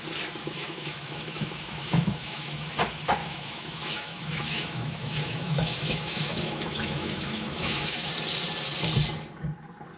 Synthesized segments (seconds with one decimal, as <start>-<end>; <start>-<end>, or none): 0.4-2.7; 3.2-8.1